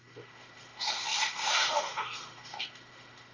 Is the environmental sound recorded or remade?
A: remade